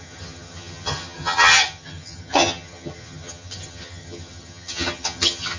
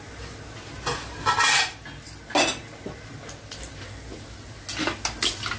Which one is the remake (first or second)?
first